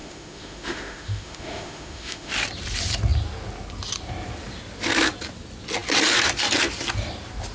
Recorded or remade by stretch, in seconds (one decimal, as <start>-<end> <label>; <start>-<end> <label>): 0.0-2.3 remade; 2.3-7.5 recorded